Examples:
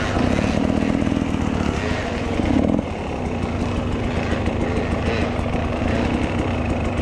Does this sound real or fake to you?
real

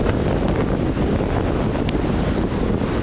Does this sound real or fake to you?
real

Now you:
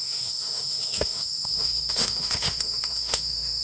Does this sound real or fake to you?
fake